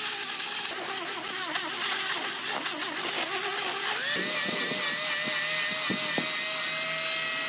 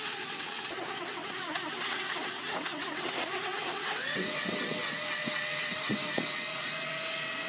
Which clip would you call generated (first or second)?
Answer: second